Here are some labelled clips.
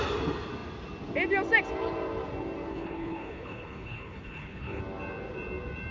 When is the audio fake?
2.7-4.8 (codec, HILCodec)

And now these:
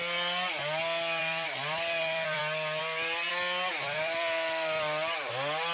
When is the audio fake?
1.2-2.4 (vocoder, BigVGAN v2); 2.8-3.3; 3.7-5.3

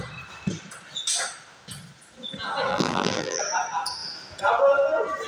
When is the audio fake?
2.7-3.4 (vocoder, BigVGAN v2)

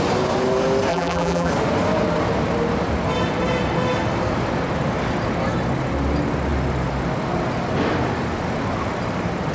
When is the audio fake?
0.9-1.5 (vocoder, BigVGAN v2)

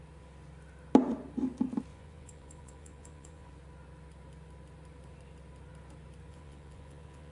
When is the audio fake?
1.9-3.5 (vocoder, Vocos); 6.3-7.3

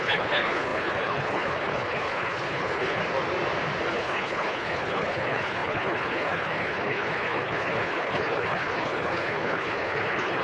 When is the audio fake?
0.0-3.0 (codec, HILCodec); 3.9-10.4

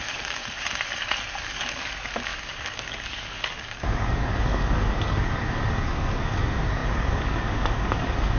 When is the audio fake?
0.0-0.4 (codec, DAC); 1.4-8.4

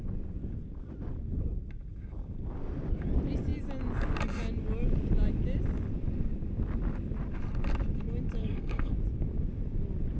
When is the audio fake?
8.4-8.9 (codec, SNAC)